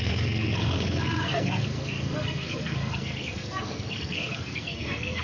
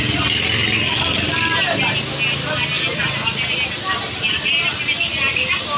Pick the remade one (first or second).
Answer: first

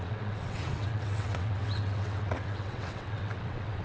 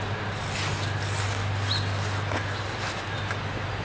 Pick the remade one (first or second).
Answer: first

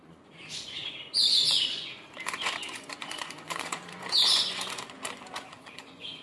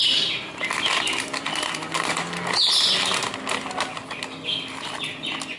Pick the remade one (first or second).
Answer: first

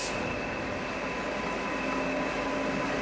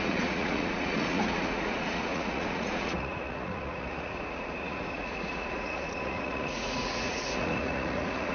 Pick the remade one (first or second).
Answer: second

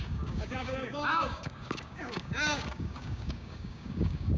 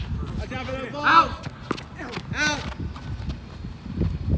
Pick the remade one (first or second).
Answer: first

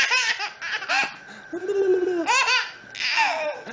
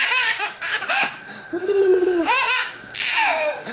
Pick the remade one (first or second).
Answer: second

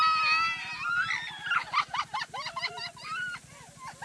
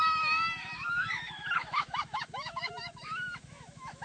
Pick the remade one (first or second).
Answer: second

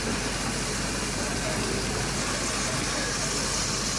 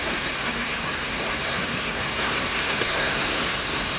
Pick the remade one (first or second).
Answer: second